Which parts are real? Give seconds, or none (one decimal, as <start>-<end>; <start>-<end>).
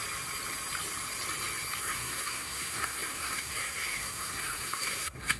0.0-1.8